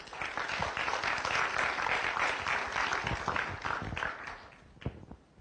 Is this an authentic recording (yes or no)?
yes